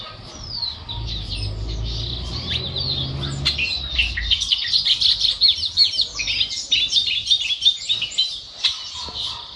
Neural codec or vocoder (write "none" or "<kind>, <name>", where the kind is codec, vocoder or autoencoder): none